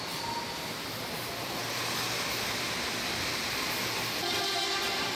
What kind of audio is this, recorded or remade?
recorded